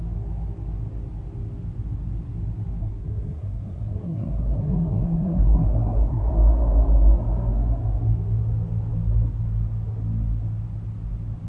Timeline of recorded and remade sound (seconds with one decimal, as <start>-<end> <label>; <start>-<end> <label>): 0.0-2.8 recorded; 2.8-6.3 remade; 6.3-11.5 recorded

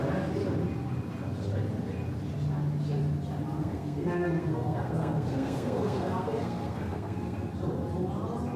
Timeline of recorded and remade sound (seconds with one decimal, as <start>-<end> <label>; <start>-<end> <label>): 0.0-3.6 recorded; 3.6-7.5 remade; 7.5-8.6 recorded

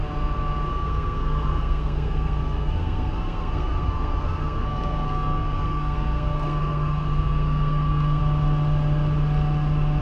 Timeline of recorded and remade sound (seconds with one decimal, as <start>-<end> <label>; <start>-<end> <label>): 0.0-0.7 recorded; 0.7-8.2 remade; 8.2-10.0 recorded

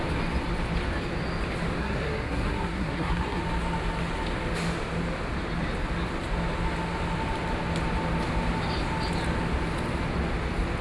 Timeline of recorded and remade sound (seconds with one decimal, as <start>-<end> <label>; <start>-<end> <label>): 0.0-1.8 recorded; 1.8-3.4 remade; 3.4-10.8 recorded

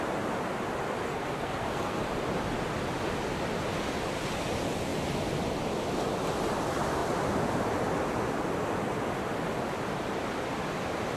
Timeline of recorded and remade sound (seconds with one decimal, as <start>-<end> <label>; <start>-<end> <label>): 0.0-1.0 recorded; 1.0-2.0 remade; 2.0-11.2 recorded

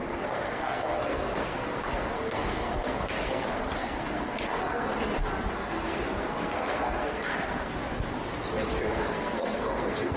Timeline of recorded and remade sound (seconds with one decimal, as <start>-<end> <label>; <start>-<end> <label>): 0.0-4.9 remade; 4.9-5.5 recorded; 5.5-7.7 remade; 7.7-8.9 recorded; 8.9-10.2 remade

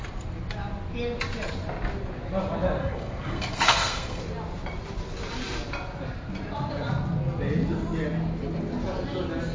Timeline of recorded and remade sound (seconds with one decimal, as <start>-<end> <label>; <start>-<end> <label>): 0.0-2.8 recorded; 2.8-4.2 remade; 4.2-9.5 recorded